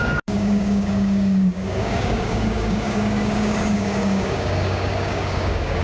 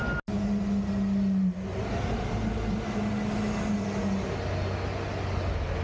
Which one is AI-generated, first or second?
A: first